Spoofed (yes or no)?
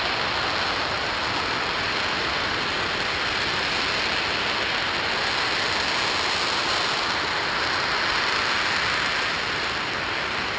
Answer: no